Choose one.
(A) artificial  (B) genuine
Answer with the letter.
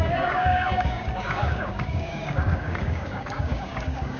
A